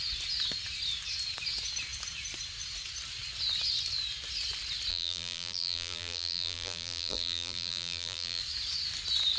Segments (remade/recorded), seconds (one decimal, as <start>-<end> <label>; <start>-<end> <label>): 0.0-4.9 recorded; 4.9-8.4 remade; 8.4-9.4 recorded